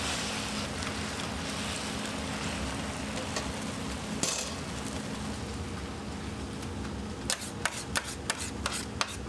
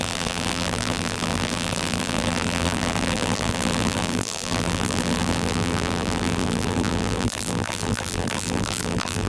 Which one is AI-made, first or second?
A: second